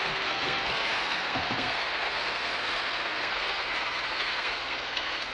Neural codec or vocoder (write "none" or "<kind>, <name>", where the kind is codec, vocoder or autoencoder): codec, SNAC